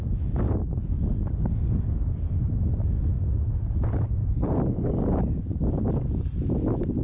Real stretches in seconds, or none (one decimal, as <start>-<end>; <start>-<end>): 0.0-7.0